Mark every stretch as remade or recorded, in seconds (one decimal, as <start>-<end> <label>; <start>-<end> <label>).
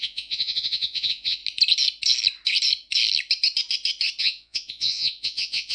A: 0.0-1.4 remade; 1.4-4.2 recorded; 4.2-5.7 remade